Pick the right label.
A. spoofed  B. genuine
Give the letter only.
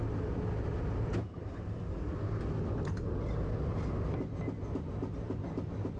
B